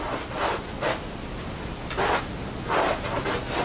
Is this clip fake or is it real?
real